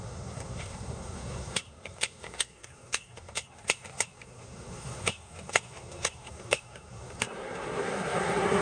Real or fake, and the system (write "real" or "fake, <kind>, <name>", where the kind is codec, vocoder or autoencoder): fake, codec, SNAC